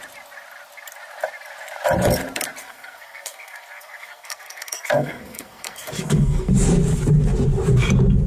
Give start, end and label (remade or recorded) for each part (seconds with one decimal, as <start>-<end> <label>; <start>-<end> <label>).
0.0-2.6 recorded; 2.6-6.5 remade; 6.5-8.3 recorded